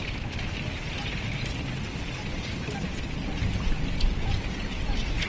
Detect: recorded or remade recorded